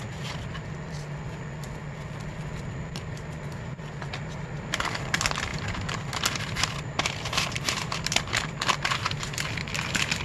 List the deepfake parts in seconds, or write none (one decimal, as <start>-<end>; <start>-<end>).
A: none